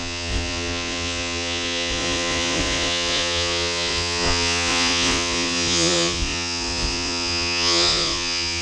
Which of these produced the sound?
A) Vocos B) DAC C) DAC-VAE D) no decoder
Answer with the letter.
A